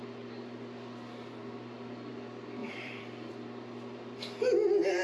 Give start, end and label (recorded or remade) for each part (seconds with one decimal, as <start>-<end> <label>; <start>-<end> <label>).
0.0-2.6 recorded; 2.6-3.3 remade; 3.3-5.0 recorded